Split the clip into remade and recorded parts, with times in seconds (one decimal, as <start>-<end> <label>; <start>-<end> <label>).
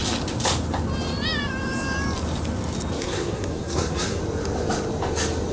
0.0-3.0 recorded; 3.0-4.2 remade; 4.2-5.5 recorded